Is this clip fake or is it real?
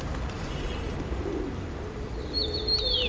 fake